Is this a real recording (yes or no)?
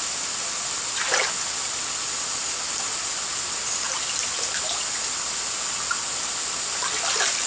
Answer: yes